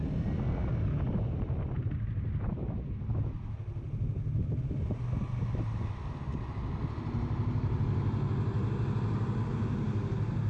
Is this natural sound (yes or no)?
yes